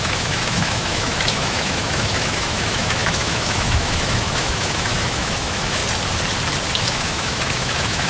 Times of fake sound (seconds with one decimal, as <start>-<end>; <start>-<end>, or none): 0.0-5.8; 6.7-8.1